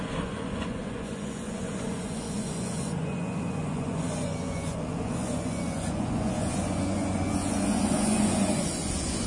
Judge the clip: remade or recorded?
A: remade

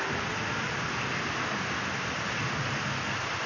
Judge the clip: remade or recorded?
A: recorded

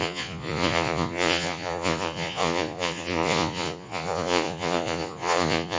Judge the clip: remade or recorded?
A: remade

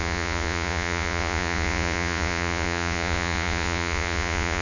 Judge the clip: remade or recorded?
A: remade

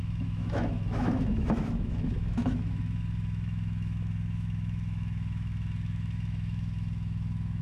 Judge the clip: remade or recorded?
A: remade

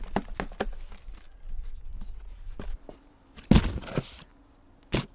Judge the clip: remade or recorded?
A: recorded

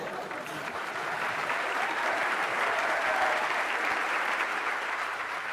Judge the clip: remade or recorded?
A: remade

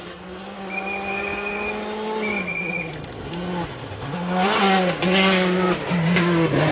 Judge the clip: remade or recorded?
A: recorded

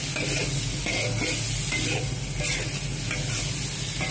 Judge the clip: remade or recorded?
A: recorded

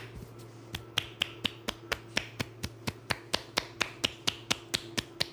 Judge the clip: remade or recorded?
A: recorded